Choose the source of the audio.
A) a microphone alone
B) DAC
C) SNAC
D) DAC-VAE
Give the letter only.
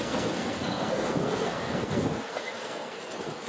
C